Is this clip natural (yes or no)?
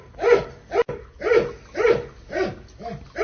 yes